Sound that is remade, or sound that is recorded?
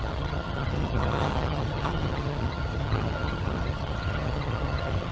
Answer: remade